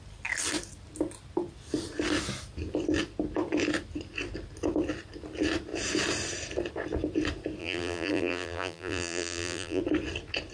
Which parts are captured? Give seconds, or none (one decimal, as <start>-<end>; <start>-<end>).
0.0-7.6; 9.8-10.5